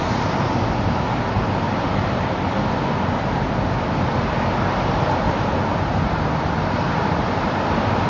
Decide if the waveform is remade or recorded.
recorded